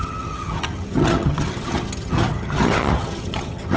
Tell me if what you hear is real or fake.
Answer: fake